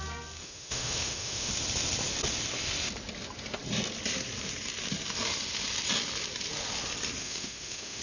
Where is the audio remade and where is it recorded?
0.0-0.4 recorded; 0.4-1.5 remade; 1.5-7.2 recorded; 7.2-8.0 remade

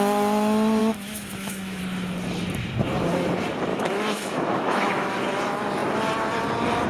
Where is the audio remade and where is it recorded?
0.0-0.8 recorded; 0.8-1.8 remade; 1.8-3.7 recorded; 3.7-5.1 remade; 5.1-6.9 recorded

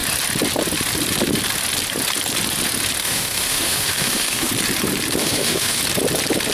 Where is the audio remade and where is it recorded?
0.0-3.0 recorded; 3.0-4.5 remade; 4.5-5.2 recorded; 5.2-5.8 remade; 5.8-6.5 recorded

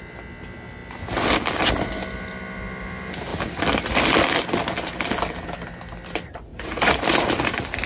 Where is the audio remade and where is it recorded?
0.0-7.9 recorded

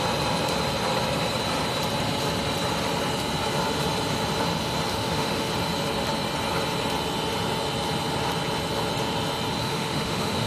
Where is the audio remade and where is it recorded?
0.0-4.9 recorded; 4.9-5.5 remade; 5.5-9.6 recorded; 9.6-10.5 remade

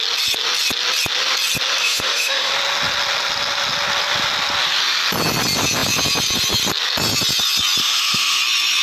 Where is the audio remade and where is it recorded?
0.0-1.8 recorded; 1.8-2.5 remade; 2.5-7.8 recorded; 7.8-8.4 remade; 8.4-8.8 recorded

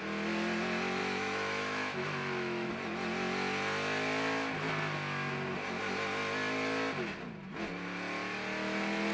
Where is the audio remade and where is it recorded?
0.0-1.0 recorded; 1.0-2.7 remade; 2.7-9.1 recorded

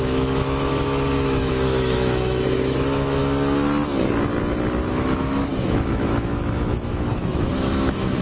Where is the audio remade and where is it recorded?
0.0-3.2 remade; 3.2-4.9 recorded; 4.9-8.2 remade